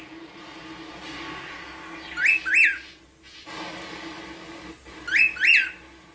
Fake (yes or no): no